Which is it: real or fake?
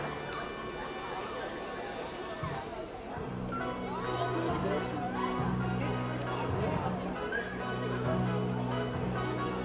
real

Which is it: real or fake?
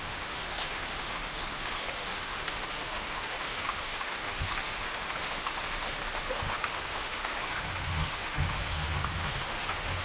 fake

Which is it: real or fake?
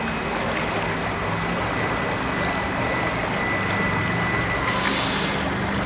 real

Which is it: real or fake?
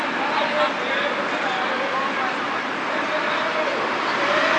real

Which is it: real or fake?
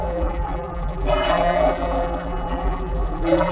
fake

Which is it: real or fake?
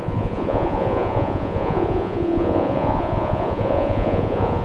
fake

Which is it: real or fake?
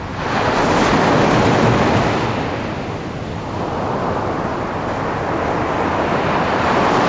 real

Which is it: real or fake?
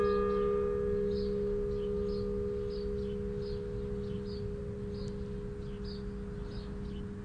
real